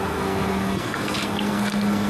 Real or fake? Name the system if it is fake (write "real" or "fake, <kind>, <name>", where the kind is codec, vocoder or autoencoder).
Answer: fake, codec, SNAC